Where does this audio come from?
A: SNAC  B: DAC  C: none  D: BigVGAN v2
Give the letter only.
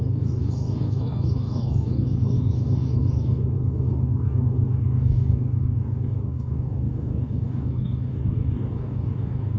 B